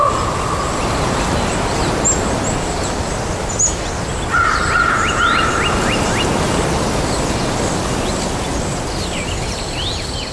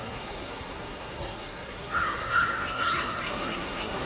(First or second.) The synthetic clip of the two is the second